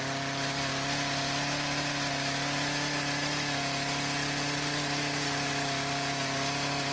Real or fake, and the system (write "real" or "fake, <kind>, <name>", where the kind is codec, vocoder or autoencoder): real